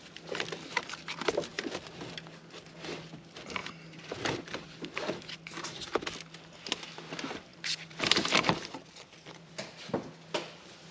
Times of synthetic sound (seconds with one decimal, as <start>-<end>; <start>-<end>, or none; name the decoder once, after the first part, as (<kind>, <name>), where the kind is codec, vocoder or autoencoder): 1.5-2.1 (vocoder, BigVGAN v2); 3.6-4.8; 7.5-9.5